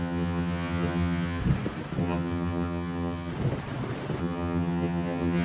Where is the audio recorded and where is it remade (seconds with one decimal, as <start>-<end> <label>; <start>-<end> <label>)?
0.0-1.4 remade; 1.4-2.0 recorded; 2.0-3.3 remade; 3.3-4.2 recorded; 4.2-5.4 remade

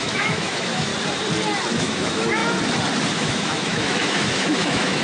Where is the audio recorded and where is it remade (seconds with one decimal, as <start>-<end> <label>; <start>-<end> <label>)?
0.0-0.9 remade; 0.9-1.7 recorded; 1.7-2.4 remade; 2.4-3.1 recorded; 3.1-5.0 remade

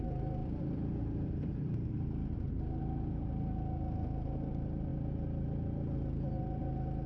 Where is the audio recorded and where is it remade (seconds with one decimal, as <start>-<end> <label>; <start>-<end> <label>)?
0.0-7.1 recorded

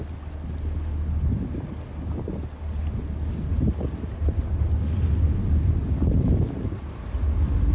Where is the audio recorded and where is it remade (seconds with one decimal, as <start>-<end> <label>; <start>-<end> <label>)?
0.0-7.7 recorded

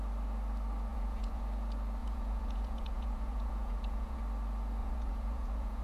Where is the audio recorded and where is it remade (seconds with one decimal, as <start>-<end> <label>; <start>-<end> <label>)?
0.0-0.9 recorded; 0.9-1.4 remade; 1.4-2.0 recorded; 2.0-4.2 remade; 4.2-4.8 recorded; 4.8-5.8 remade

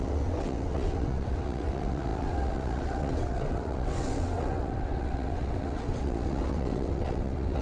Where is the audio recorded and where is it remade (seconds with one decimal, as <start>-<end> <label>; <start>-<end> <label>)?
0.0-7.6 remade

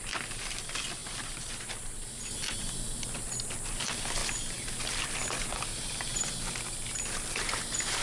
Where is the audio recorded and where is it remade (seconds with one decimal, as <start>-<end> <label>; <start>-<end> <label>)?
0.0-1.0 recorded; 1.0-1.6 remade; 1.6-5.2 recorded; 5.2-6.3 remade; 6.3-8.0 recorded